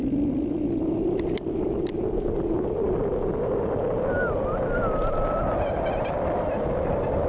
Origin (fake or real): real